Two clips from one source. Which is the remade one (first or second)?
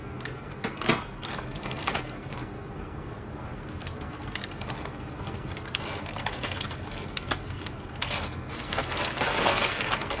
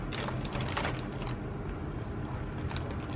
first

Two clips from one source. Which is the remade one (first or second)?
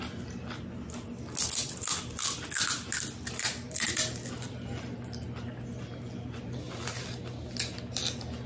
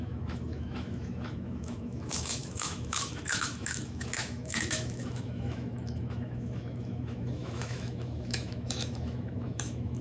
second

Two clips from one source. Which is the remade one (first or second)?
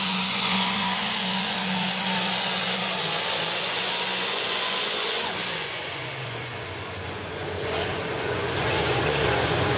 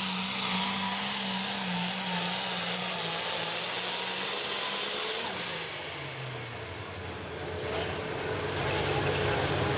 first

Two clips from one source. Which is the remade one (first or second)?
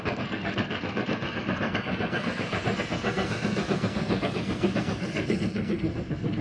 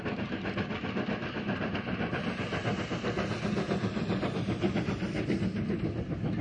first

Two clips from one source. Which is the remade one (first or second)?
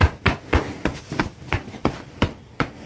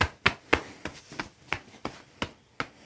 first